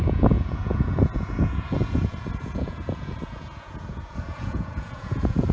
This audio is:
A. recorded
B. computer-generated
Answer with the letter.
B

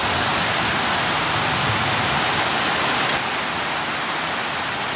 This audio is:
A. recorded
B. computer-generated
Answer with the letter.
A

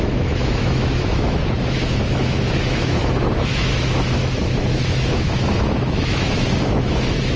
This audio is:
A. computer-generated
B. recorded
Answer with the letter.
A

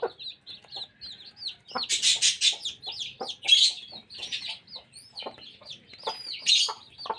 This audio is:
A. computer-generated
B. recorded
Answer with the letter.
B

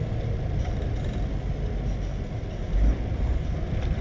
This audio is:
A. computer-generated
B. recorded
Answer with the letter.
B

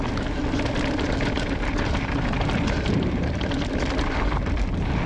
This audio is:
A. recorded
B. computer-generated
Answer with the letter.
A